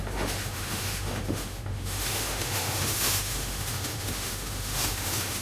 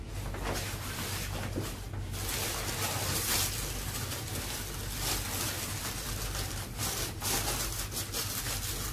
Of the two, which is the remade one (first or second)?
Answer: first